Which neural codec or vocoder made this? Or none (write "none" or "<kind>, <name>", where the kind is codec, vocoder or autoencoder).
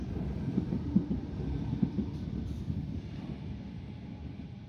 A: none